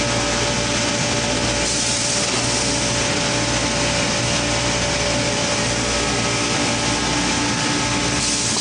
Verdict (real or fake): real